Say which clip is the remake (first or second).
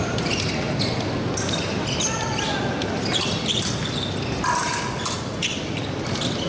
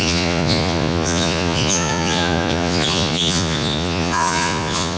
second